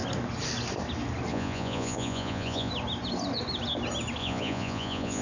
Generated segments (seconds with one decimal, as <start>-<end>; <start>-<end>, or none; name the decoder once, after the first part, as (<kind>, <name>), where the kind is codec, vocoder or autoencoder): 1.3-2.7 (vocoder, Vocos); 4.2-5.2